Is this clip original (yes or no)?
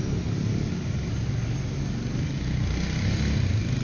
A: yes